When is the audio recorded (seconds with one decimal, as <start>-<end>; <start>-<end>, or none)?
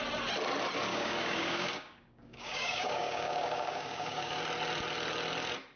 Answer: 0.0-0.9; 4.4-5.8